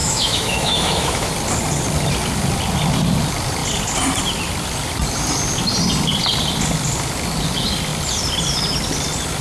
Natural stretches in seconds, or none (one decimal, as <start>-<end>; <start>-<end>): 1.3-9.4